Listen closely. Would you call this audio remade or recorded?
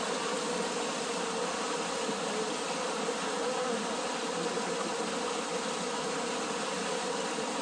recorded